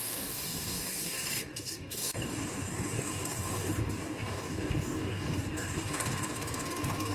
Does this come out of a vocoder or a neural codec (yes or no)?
yes